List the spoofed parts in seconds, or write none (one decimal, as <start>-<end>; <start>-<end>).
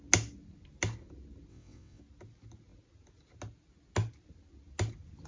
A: 1.5-2.0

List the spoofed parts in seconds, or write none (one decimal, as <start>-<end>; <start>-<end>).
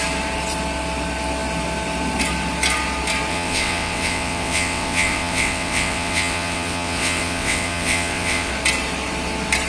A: 3.3-8.5